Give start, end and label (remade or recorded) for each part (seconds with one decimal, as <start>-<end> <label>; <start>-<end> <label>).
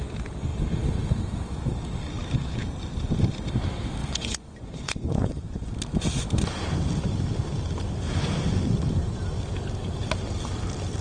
0.0-4.0 recorded; 4.0-5.7 remade; 5.7-11.0 recorded